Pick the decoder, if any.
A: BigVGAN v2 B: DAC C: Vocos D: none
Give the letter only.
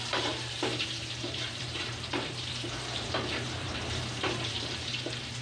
A